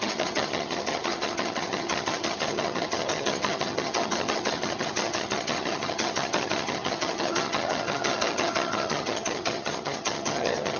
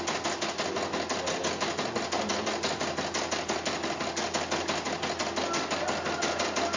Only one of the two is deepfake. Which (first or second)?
first